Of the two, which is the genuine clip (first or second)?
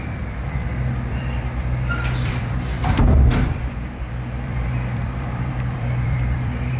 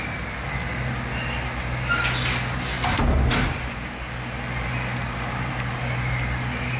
second